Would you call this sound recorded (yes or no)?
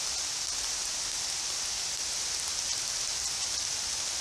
yes